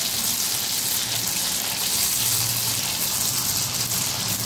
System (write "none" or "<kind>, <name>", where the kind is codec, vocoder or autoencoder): none